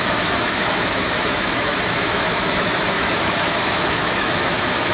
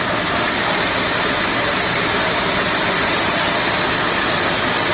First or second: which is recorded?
second